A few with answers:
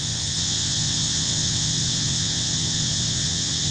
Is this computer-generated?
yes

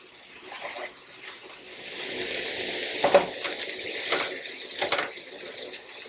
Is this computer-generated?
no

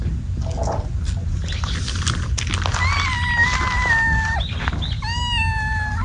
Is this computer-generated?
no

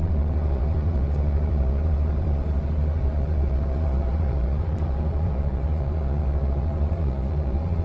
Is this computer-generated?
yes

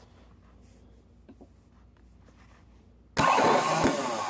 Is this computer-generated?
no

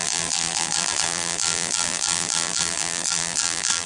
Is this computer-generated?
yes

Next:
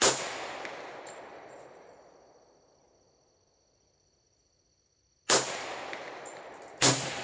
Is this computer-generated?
no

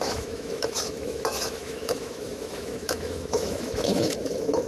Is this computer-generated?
yes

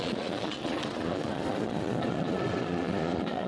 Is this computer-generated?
yes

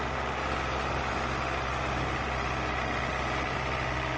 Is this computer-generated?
no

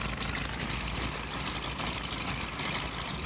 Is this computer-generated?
no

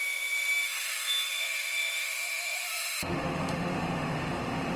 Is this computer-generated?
yes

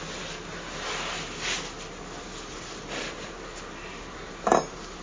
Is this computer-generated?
no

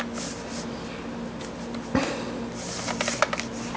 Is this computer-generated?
no